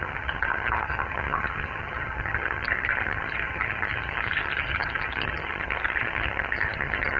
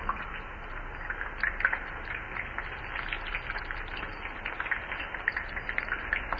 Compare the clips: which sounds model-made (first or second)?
first